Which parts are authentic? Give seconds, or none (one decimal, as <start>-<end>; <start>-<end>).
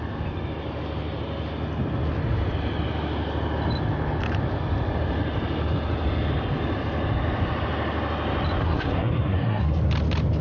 0.0-8.6; 9.8-10.4